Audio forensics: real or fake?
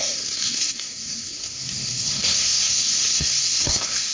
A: fake